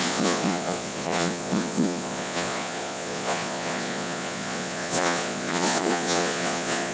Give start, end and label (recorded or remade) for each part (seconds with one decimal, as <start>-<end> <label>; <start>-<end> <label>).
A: 0.0-6.9 remade